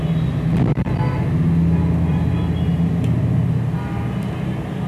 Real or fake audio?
real